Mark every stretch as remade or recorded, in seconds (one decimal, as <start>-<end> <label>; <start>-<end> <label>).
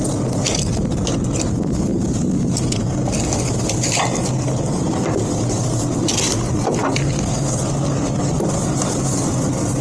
0.0-9.8 recorded